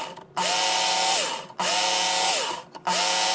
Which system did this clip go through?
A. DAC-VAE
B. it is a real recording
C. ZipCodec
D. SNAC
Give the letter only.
B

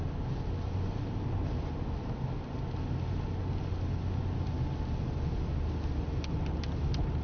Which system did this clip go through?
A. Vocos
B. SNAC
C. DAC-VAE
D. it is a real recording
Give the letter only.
D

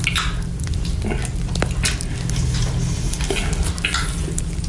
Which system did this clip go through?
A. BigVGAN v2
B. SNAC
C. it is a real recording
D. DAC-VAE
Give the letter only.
C